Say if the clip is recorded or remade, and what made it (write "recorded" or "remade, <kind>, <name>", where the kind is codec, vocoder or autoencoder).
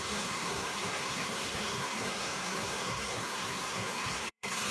remade, codec, SNAC